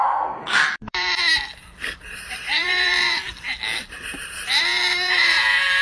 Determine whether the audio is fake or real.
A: fake